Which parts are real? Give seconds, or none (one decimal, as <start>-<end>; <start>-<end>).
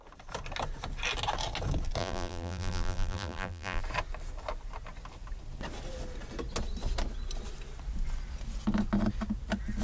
0.0-2.0; 3.8-9.8